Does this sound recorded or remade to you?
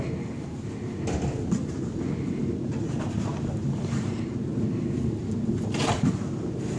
recorded